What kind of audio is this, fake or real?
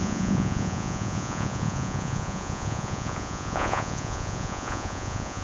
fake